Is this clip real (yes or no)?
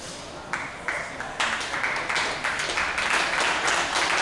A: yes